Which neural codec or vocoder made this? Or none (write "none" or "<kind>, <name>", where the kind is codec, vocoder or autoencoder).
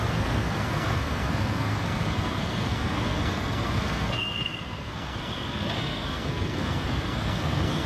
codec, SNAC